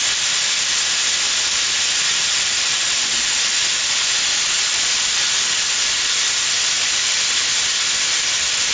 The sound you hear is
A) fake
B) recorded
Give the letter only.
B